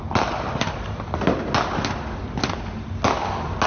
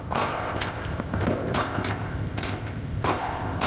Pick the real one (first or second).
first